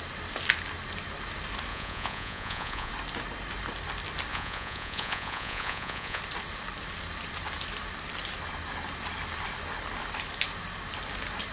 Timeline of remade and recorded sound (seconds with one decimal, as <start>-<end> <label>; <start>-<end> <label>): 0.0-1.7 recorded; 1.7-2.9 remade; 2.9-4.3 recorded; 4.3-6.2 remade; 6.2-11.5 recorded